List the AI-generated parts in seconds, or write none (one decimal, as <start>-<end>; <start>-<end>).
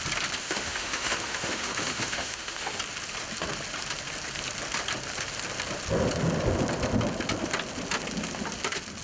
0.4-2.8